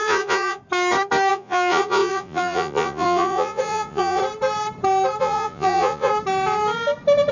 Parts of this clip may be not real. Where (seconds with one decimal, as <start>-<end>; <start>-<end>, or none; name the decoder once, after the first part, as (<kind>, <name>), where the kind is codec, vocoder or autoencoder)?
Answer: 0.0-0.6 (vocoder, Vocos); 1.3-4.2; 5.2-6.1